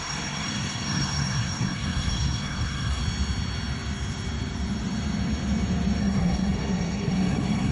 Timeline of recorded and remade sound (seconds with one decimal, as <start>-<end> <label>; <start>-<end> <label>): 0.0-3.0 remade; 3.0-6.0 recorded; 6.0-7.7 remade